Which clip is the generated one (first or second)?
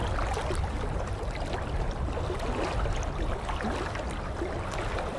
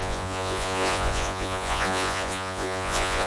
second